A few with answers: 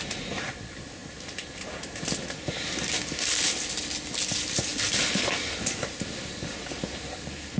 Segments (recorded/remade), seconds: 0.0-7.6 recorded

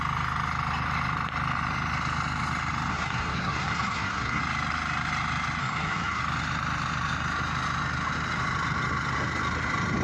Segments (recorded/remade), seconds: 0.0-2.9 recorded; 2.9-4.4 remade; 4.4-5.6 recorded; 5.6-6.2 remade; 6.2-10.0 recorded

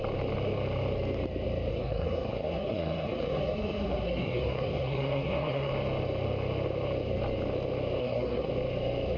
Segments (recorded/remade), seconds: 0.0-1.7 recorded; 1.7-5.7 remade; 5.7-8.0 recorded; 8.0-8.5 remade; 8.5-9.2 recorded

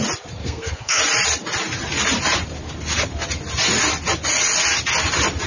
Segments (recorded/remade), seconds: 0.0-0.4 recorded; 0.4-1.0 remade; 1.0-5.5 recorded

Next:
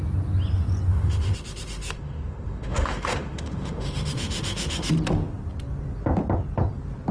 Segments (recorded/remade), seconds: 0.0-0.9 recorded; 0.9-4.9 remade; 4.9-7.1 recorded

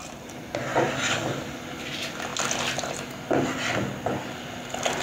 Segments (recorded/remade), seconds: 0.0-0.7 recorded; 0.7-1.8 remade; 1.8-5.0 recorded

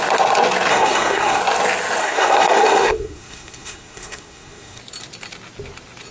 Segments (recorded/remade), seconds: 0.0-0.7 recorded; 0.7-1.4 remade; 1.4-2.0 recorded; 2.0-4.8 remade; 4.8-6.1 recorded

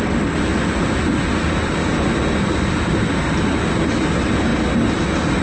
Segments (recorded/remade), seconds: 0.0-5.4 recorded